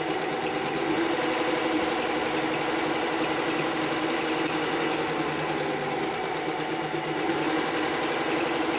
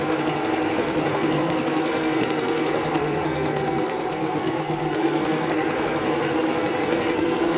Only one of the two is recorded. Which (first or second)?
first